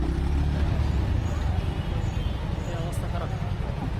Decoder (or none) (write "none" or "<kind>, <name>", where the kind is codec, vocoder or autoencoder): none